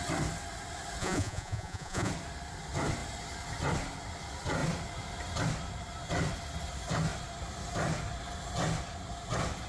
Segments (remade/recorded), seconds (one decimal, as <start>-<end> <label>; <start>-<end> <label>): 0.0-1.0 recorded; 1.0-2.1 remade; 2.1-9.7 recorded